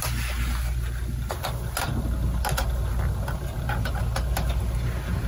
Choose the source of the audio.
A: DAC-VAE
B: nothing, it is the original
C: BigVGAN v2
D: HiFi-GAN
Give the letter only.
B